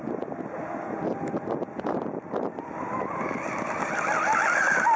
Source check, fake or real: real